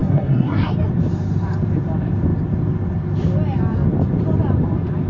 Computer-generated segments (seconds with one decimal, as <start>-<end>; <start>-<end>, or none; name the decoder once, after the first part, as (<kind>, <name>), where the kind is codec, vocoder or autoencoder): 0.0-0.7 (codec, SNAC)